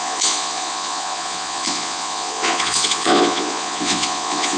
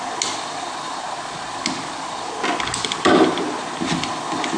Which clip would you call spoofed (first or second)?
first